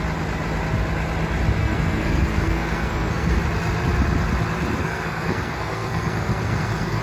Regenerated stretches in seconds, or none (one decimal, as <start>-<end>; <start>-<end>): 1.6-3.4; 4.8-7.0